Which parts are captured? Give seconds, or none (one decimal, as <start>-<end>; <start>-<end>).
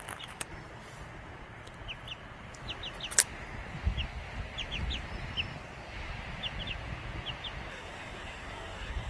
0.0-7.7